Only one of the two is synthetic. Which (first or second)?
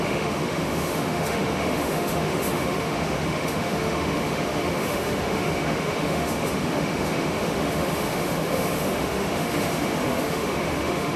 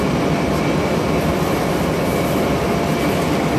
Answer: first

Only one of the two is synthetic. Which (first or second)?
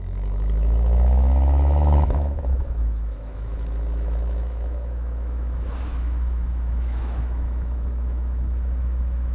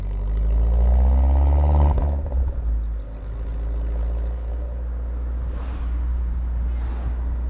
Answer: first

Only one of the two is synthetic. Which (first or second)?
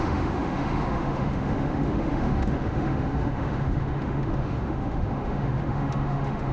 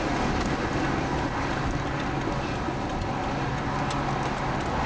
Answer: first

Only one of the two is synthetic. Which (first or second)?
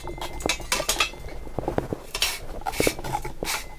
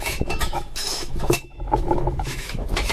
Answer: second